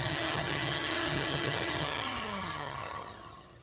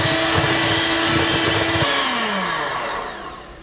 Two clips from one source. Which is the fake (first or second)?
first